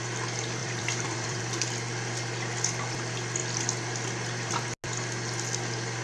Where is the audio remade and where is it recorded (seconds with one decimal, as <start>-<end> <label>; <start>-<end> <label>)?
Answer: 0.0-0.6 recorded; 0.6-1.4 remade; 1.4-6.0 recorded

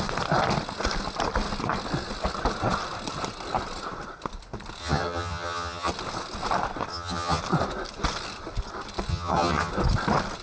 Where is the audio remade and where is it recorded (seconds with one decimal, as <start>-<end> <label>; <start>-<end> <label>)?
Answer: 0.0-4.8 recorded; 4.8-5.9 remade; 5.9-6.9 recorded; 6.9-7.4 remade; 7.4-9.1 recorded; 9.1-9.7 remade; 9.7-10.4 recorded

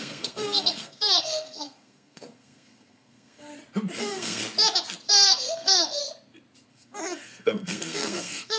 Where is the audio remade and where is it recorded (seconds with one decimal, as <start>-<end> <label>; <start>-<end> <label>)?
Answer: 0.0-3.5 remade; 3.5-4.0 recorded; 4.0-4.4 remade; 4.4-5.1 recorded; 5.1-6.0 remade; 6.0-6.7 recorded; 6.7-8.6 remade

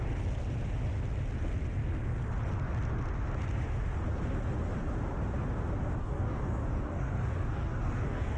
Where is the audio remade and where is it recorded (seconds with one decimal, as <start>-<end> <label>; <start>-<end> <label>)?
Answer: 0.0-6.0 recorded; 6.0-8.4 remade